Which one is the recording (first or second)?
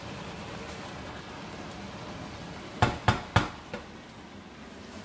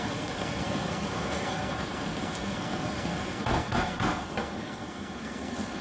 first